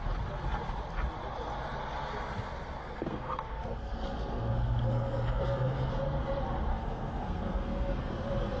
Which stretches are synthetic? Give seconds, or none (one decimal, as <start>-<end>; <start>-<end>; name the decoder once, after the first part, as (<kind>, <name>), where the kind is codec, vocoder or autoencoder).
2.8-5.9 (codec, SNAC); 6.7-8.1

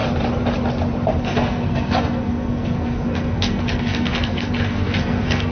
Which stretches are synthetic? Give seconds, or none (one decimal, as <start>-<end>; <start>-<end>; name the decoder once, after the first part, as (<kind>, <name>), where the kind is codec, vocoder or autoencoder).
1.2-5.5 (codec, SNAC)